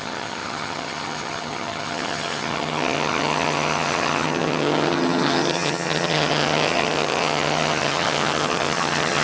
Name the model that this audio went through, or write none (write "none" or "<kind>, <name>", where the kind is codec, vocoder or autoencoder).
vocoder, HiFi-GAN